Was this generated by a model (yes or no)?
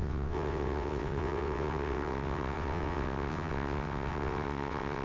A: yes